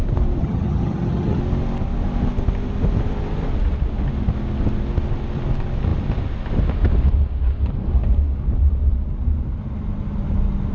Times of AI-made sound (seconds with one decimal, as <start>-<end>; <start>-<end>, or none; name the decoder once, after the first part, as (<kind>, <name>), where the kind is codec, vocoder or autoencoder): 0.4-1.4 (vocoder, HiFi-GAN)